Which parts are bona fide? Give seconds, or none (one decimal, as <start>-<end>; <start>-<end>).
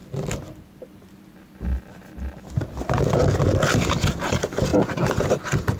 0.0-5.8